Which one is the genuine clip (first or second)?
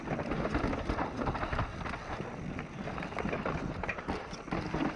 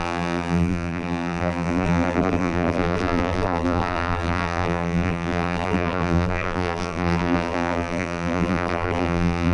first